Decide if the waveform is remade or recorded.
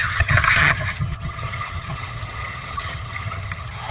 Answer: remade